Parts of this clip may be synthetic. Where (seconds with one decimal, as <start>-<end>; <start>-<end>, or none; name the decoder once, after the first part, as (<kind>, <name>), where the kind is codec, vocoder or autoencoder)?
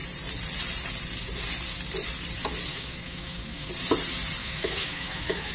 2.7-3.7 (autoencoder, DAC-VAE); 4.4-5.5